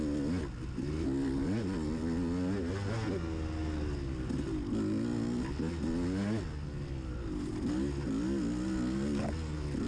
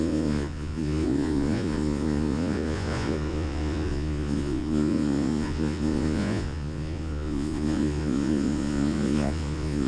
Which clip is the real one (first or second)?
first